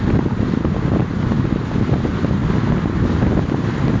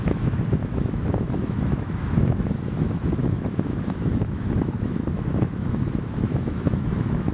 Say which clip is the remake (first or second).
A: second